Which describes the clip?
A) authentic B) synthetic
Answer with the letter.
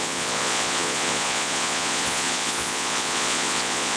B